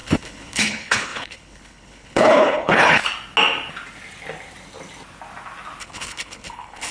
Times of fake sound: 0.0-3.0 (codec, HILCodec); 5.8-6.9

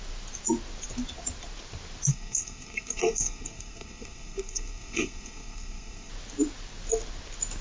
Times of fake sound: 2.1-6.1 (codec, SNAC)

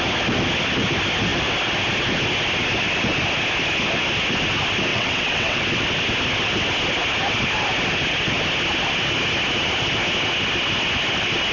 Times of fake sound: 4.9-5.6 (vocoder, WaveNeXt)

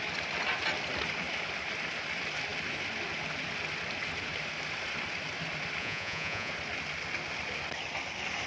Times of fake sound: 5.8-6.5 (vocoder, Vocos)

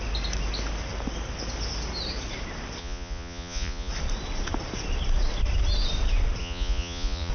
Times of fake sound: 2.8-3.9 (vocoder, Vocos); 6.4-7.3

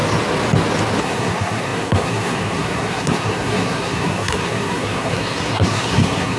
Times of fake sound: 1.0-6.4 (codec, SNAC)

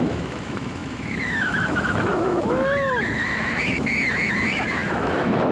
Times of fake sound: 0.0-5.5 (autoencoder, DAC-VAE)